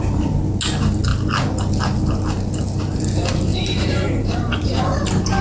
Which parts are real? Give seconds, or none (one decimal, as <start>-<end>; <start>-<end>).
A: 0.0-3.5; 5.0-5.4